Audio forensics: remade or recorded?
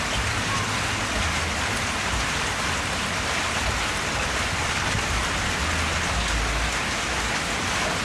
recorded